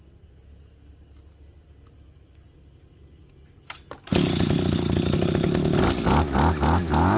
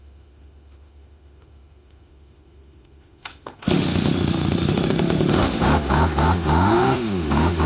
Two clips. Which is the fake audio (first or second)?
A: second